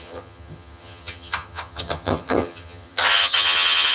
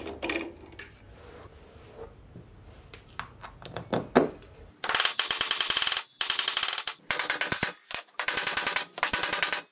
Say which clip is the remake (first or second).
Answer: first